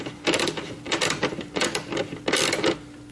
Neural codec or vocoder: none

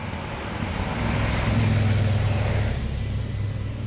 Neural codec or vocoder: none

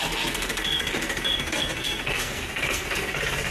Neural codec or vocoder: codec, SNAC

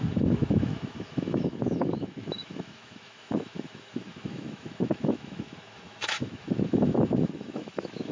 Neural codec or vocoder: autoencoder, DAC-VAE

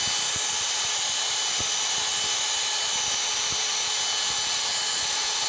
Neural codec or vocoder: none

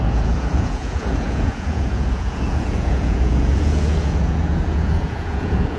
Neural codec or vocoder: vocoder, Vocos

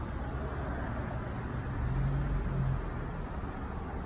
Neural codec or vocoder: none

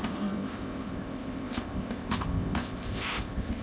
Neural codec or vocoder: codec, ZipCodec